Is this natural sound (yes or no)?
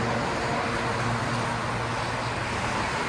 yes